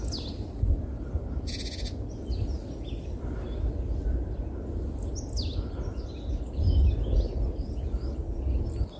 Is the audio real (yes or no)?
yes